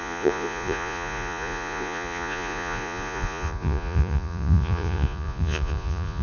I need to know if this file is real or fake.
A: fake